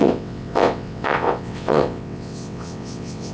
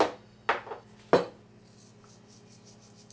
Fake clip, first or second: first